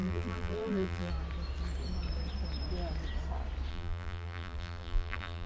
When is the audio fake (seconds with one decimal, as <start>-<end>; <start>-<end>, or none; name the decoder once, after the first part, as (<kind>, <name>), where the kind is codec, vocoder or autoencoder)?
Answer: 0.0-1.1 (vocoder, BigVGAN v2); 3.7-5.5